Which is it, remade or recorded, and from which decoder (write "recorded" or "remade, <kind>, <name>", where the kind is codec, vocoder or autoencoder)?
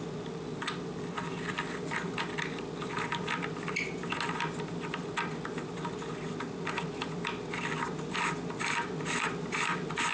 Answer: recorded